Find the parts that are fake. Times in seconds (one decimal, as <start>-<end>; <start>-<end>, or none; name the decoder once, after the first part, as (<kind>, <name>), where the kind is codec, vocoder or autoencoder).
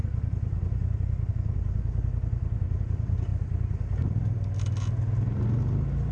none